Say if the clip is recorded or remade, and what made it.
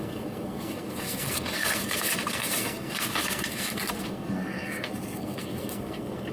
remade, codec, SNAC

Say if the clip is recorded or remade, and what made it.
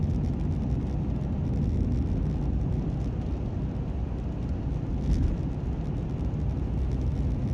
recorded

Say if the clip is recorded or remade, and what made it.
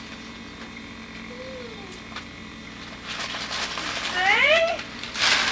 recorded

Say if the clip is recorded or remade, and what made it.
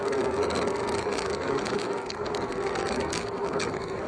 remade, codec, SNAC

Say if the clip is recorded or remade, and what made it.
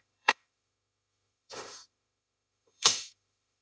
remade, autoencoder, DAC-VAE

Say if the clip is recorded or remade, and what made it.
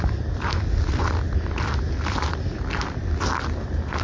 recorded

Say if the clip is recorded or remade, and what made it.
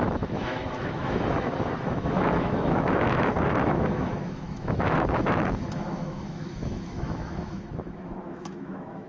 remade, autoencoder, DAC-VAE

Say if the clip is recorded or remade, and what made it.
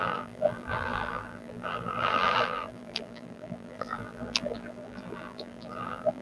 remade, vocoder, BigVGAN v2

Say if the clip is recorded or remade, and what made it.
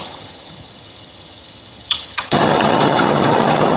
remade, vocoder, HiFi-GAN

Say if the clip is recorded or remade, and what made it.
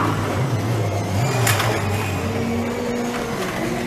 recorded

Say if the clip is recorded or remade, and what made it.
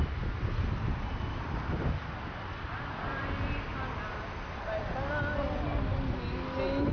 recorded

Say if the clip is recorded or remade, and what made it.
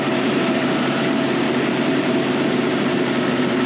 remade, vocoder, BigVGAN v2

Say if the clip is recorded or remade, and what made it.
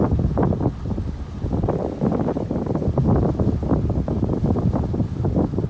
recorded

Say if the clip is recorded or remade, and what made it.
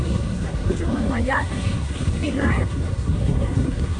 remade, codec, SNAC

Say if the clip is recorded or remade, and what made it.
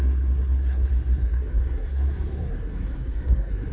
remade, codec, SNAC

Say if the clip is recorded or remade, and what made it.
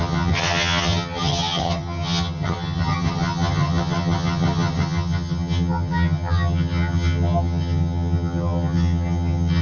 remade, vocoder, HiFi-GAN